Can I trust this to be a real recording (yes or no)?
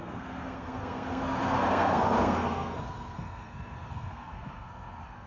no